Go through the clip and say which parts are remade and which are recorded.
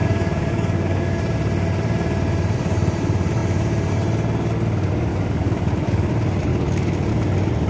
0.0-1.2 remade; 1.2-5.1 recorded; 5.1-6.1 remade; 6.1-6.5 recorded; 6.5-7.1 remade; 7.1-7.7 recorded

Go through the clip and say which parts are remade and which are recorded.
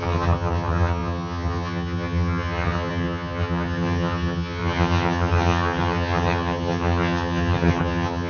0.0-8.3 remade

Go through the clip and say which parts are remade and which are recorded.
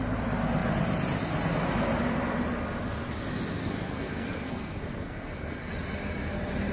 0.0-3.6 recorded; 3.6-5.7 remade; 5.7-6.7 recorded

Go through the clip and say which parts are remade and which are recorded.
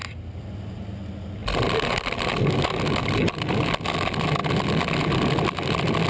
0.0-6.1 recorded